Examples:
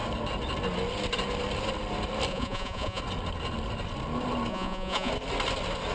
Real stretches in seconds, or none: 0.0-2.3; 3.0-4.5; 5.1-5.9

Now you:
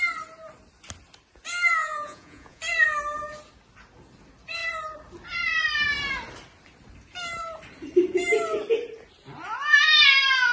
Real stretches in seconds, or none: 0.0-1.8; 2.6-10.5

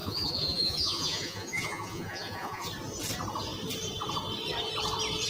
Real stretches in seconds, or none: 2.7-5.3

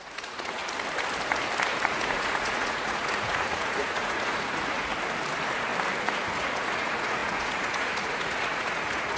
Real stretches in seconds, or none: 0.6-1.8; 4.9-6.0

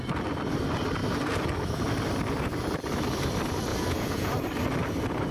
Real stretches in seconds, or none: 0.0-3.7; 4.3-5.3

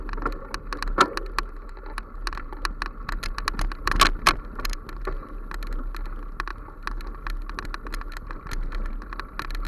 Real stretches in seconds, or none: 0.0-9.7

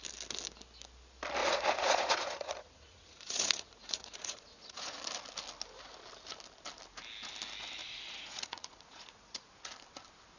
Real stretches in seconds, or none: 0.0-1.4; 5.0-7.8; 9.7-10.4